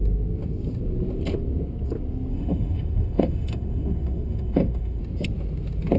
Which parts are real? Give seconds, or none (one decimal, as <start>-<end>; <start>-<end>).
0.0-2.3; 5.0-6.0